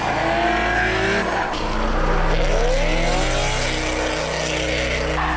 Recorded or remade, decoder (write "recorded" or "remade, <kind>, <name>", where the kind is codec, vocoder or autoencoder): recorded